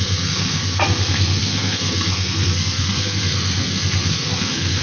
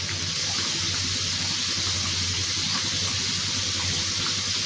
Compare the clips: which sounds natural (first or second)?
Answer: second